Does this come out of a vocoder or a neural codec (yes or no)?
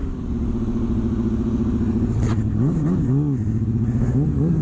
no